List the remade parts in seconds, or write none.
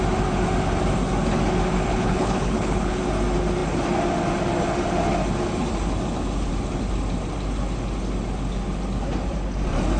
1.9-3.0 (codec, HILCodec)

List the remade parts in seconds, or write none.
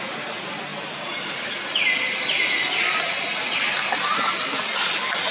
none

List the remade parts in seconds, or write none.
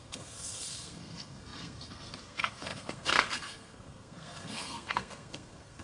0.0-5.8 (codec, SNAC)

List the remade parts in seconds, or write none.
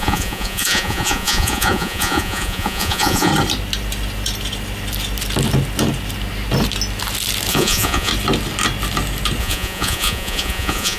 0.0-3.3 (vocoder, Vocos); 7.5-8.1; 9.4-11.0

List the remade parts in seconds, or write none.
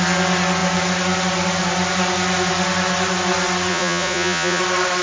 3.7-4.6 (vocoder, Vocos)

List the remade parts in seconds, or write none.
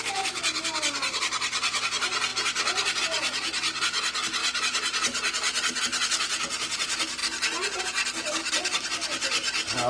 none